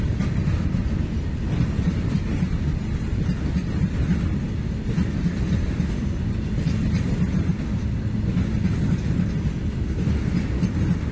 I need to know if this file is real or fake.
real